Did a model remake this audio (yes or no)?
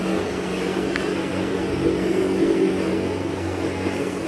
yes